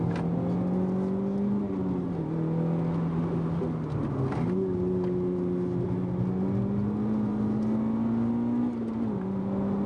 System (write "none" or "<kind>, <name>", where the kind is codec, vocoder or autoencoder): none